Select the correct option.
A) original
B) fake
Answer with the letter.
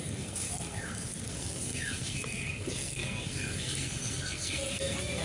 B